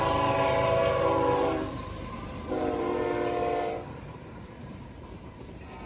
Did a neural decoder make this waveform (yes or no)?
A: yes